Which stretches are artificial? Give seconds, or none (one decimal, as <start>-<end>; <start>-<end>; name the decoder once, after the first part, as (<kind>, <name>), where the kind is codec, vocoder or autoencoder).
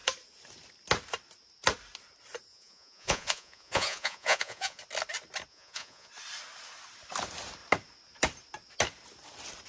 2.5-4.8 (vocoder, Vocos); 5.5-6.1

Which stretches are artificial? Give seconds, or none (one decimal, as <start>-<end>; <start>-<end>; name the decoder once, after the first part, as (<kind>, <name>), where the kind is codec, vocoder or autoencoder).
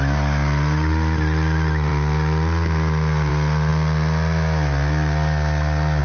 none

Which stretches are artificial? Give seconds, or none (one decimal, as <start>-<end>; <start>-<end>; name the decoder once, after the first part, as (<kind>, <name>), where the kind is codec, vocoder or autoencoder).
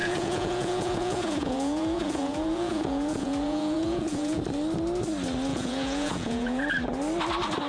0.0-4.4 (vocoder, Vocos); 5.5-6.6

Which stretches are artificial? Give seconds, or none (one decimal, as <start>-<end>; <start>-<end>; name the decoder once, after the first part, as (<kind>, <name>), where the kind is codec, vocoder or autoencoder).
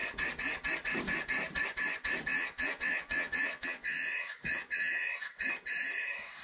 2.3-5.2 (vocoder, Vocos)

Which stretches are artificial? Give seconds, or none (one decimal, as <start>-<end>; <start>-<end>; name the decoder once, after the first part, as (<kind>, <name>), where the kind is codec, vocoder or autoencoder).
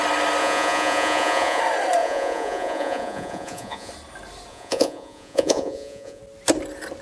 0.4-1.6 (vocoder, Vocos); 2.0-3.9; 4.5-6.2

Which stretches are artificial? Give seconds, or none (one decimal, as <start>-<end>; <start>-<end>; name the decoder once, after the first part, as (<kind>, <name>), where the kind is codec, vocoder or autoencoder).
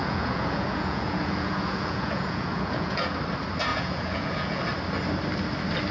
0.0-3.2 (vocoder, Vocos); 3.7-4.6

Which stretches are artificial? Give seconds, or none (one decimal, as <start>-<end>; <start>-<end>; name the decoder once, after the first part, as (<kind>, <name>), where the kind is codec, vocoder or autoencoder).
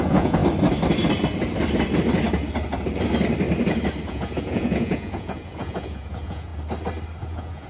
0.0-0.4 (vocoder, Vocos); 4.1-6.5; 7.2-7.7